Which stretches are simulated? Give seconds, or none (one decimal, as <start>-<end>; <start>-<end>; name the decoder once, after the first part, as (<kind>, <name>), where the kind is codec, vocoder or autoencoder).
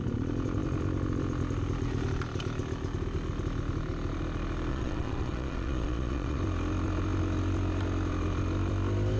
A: 4.7-6.4 (vocoder, Vocos)